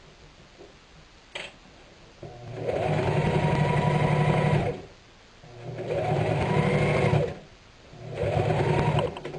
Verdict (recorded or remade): recorded